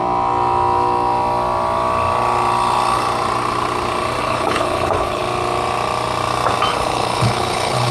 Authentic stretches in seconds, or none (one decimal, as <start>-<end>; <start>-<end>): 0.0-4.2; 5.2-6.7